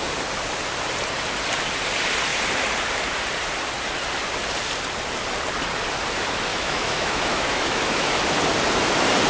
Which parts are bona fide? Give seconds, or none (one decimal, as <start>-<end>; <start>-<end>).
0.0-6.5; 8.2-9.3